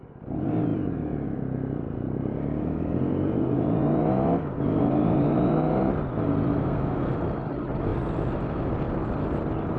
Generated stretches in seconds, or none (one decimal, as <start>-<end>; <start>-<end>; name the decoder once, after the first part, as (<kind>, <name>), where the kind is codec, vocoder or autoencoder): 6.6-7.1 (codec, SNAC)